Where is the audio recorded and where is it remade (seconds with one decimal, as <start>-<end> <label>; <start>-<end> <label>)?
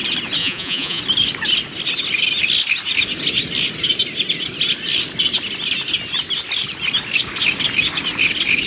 0.0-0.4 recorded; 0.4-1.0 remade; 1.0-8.7 recorded